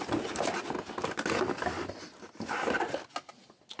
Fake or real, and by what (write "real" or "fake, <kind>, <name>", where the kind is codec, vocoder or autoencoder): real